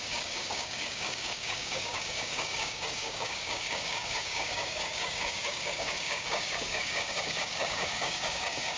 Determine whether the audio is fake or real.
fake